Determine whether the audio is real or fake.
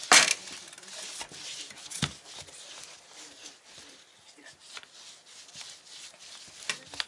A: real